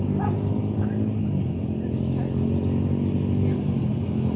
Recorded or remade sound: recorded